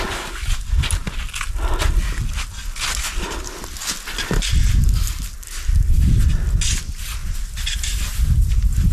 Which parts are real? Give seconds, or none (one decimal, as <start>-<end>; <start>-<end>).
0.0-7.2; 7.8-8.9